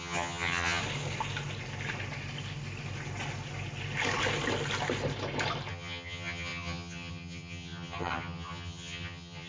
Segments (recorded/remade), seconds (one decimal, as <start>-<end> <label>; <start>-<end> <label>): 0.0-0.8 remade; 0.8-5.7 recorded; 5.7-9.5 remade